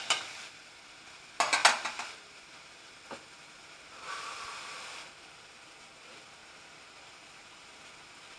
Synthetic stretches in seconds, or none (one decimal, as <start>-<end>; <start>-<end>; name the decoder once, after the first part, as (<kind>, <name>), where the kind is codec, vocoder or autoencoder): none